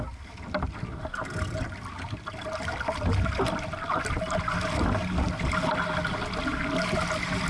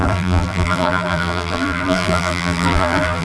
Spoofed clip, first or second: second